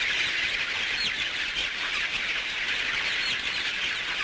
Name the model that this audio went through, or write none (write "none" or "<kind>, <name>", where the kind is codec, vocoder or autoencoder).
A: none